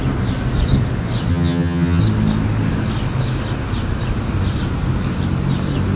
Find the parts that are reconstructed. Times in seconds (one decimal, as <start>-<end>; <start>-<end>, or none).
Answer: 1.3-2.0